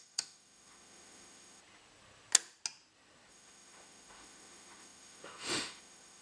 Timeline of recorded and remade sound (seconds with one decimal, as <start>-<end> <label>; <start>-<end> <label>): 0.0-1.6 remade; 1.6-3.3 recorded; 3.3-6.2 remade